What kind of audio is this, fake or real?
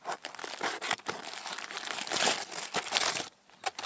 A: real